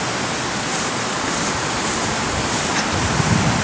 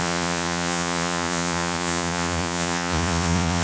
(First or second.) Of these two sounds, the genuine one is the first